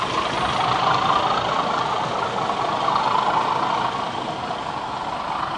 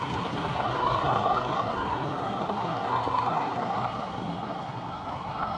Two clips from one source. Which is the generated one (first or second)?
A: second